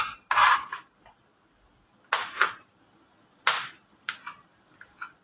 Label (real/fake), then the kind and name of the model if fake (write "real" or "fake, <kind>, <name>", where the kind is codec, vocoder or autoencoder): real